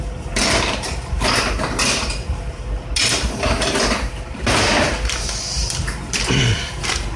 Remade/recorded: remade